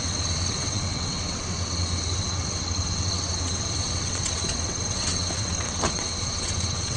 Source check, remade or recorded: remade